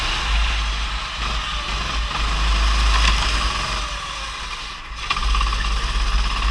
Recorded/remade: recorded